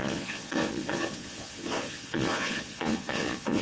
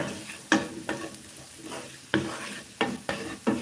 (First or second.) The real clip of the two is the second